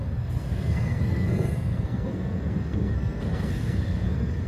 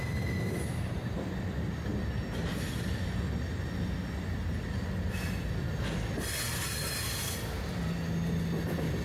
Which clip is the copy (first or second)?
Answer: first